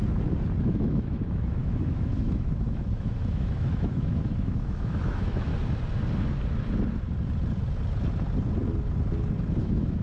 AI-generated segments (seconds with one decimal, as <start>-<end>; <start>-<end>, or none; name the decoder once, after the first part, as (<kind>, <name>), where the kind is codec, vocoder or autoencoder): 0.6-5.5 (autoencoder, DAC-VAE); 9.6-10.0